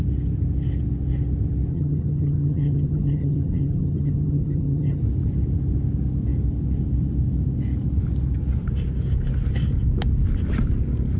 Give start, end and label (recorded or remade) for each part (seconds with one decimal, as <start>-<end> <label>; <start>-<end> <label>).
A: 0.0-1.7 recorded; 1.7-5.0 remade; 5.0-11.2 recorded